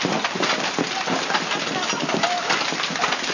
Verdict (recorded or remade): recorded